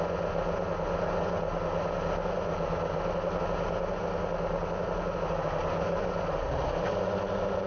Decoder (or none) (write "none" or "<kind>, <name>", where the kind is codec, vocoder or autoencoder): none